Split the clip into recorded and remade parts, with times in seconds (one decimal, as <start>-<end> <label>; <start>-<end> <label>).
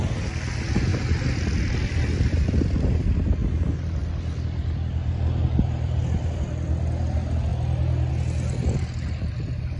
0.0-0.9 recorded; 0.9-2.6 remade; 2.6-3.4 recorded; 3.4-6.0 remade; 6.0-9.8 recorded